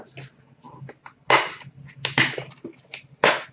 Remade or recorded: recorded